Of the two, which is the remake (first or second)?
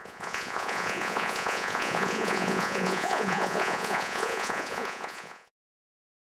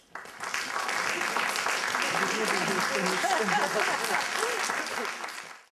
first